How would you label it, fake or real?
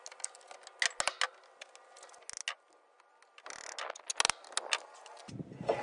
real